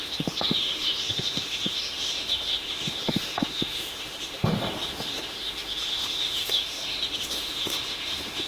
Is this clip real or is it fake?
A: fake